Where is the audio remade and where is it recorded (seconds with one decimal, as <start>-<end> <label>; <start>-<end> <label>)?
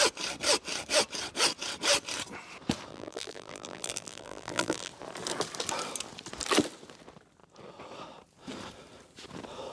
0.0-2.9 recorded; 2.9-4.9 remade; 4.9-9.7 recorded